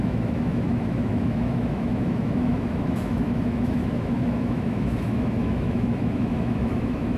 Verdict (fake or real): fake